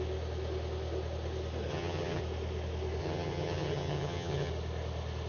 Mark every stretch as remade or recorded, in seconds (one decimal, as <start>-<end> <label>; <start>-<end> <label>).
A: 0.0-1.7 recorded; 1.7-2.2 remade; 2.2-3.0 recorded; 3.0-4.5 remade; 4.5-5.3 recorded